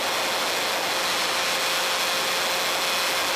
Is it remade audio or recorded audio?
recorded